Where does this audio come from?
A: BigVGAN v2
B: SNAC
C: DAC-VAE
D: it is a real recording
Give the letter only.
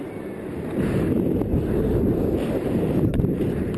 A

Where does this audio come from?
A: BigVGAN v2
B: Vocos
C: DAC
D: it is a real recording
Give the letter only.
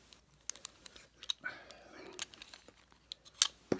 D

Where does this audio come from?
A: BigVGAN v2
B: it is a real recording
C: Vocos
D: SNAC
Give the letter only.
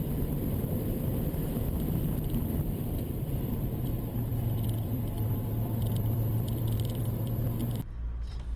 A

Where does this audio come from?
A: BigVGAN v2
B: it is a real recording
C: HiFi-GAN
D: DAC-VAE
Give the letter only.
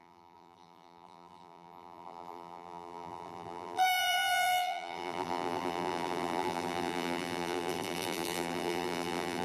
A